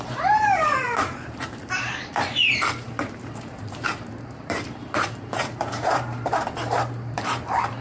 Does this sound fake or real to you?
fake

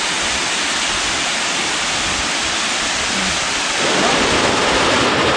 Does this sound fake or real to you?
fake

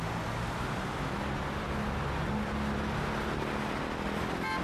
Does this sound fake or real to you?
real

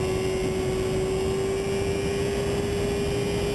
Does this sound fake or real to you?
real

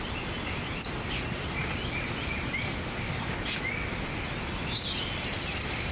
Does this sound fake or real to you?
real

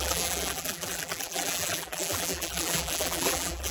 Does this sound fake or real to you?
fake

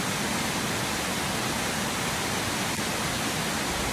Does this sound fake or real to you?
real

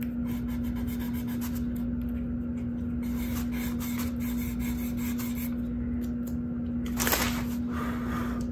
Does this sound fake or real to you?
real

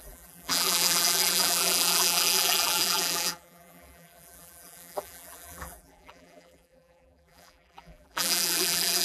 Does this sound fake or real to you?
fake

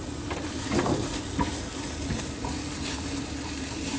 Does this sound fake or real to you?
real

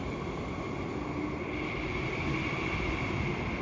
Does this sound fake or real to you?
real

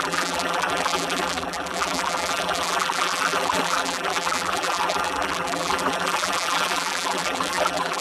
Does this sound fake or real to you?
fake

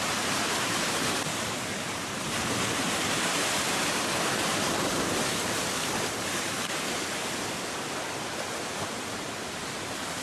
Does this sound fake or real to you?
fake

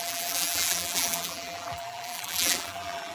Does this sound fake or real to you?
fake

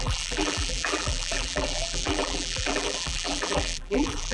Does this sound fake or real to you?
fake